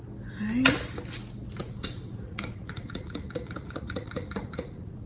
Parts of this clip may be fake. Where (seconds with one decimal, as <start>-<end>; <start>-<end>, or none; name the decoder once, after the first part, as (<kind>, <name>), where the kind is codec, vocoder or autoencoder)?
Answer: 1.6-5.1 (vocoder, Vocos)